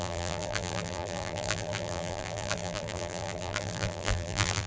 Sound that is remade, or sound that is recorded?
remade